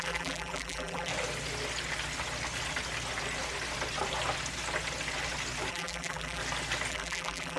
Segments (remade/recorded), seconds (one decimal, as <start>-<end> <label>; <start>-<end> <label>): 0.0-1.1 remade; 1.1-5.7 recorded; 5.7-6.4 remade; 6.4-6.9 recorded; 6.9-7.6 remade